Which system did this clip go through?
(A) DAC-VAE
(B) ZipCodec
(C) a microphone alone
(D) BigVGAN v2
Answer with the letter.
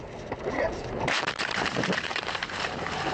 D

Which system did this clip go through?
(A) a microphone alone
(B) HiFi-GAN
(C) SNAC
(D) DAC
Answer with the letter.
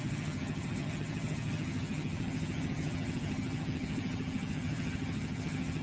B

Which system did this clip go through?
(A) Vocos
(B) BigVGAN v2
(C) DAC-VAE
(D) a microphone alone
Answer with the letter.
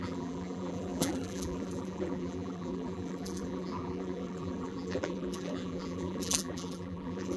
B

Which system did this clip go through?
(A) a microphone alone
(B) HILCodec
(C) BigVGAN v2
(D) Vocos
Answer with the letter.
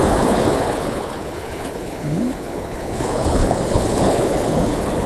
B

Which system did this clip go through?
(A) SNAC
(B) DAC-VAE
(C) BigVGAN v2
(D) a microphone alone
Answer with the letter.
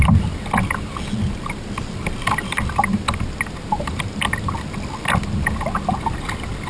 D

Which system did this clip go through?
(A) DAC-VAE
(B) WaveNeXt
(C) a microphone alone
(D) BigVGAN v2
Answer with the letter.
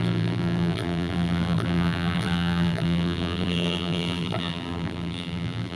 D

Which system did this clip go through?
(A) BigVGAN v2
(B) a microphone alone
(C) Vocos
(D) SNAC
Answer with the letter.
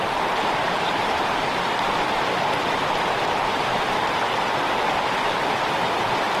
B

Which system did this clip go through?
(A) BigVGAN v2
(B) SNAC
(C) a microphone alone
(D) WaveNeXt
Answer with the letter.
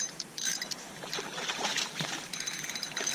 A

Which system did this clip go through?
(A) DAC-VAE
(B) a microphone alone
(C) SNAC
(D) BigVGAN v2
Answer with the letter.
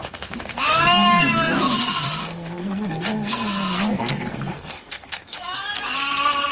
C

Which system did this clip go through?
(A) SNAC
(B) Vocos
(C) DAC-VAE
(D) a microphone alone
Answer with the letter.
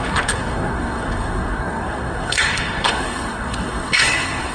A